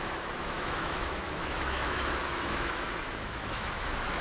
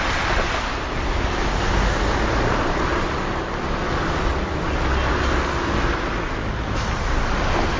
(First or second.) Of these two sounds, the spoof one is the first